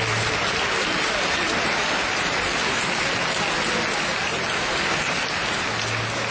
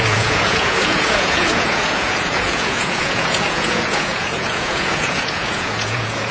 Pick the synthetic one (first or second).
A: second